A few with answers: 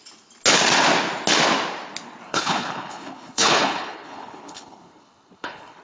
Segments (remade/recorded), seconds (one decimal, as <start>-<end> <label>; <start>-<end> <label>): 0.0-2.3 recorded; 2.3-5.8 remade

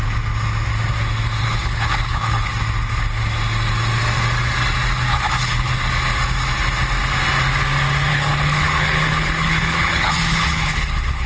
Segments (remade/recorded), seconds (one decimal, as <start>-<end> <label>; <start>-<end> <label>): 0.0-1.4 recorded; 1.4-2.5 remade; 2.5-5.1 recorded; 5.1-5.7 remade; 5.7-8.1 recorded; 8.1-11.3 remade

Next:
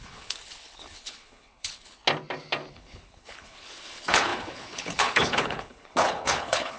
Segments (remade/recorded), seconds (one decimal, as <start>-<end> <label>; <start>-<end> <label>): 0.0-2.0 remade; 2.0-2.7 recorded; 2.7-6.8 remade

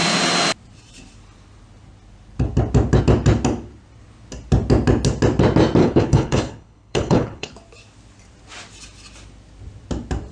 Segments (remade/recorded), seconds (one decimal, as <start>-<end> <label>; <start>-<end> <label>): 0.0-5.8 recorded; 5.8-7.5 remade; 7.5-10.3 recorded

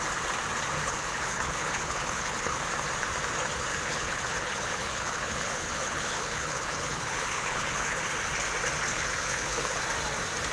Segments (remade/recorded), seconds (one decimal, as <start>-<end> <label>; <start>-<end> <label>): 0.0-0.8 recorded; 0.8-2.6 remade; 2.6-3.7 recorded; 3.7-8.0 remade; 8.0-8.9 recorded; 8.9-9.8 remade; 9.8-10.5 recorded

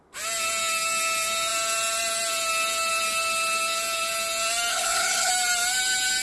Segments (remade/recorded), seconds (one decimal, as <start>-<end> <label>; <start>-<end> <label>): 0.0-4.7 recorded; 4.7-5.3 remade; 5.3-6.2 recorded